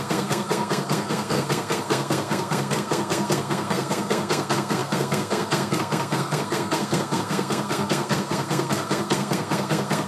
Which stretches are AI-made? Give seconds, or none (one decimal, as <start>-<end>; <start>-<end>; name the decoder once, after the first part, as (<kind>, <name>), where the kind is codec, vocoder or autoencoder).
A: 0.0-10.1 (codec, SNAC)